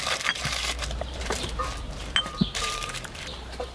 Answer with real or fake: fake